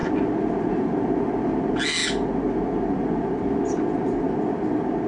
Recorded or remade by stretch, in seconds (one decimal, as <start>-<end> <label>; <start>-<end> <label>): 0.0-5.1 recorded